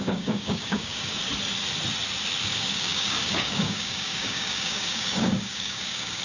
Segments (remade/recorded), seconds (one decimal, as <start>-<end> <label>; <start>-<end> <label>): 0.0-1.2 remade; 1.2-2.4 recorded; 2.4-6.2 remade